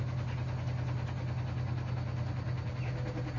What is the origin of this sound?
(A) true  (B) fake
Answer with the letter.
A